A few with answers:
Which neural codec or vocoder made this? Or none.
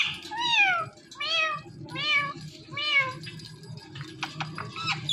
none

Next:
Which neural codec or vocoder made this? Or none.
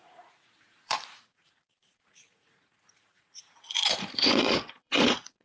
vocoder, Vocos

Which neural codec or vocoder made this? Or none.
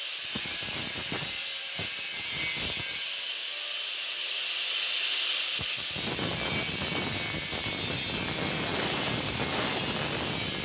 none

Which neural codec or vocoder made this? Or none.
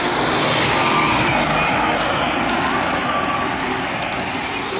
none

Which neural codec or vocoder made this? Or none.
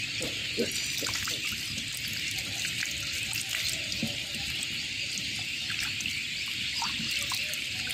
none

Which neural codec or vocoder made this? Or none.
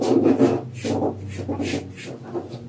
none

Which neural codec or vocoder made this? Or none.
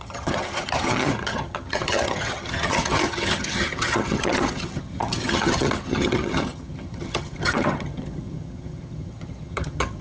vocoder, HiFi-GAN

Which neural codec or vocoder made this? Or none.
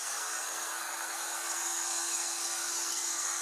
codec, SNAC